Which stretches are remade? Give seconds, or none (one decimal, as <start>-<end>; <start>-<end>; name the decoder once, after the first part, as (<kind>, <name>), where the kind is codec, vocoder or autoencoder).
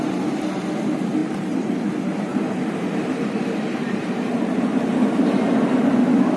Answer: 1.2-1.9 (vocoder, BigVGAN v2); 2.3-5.1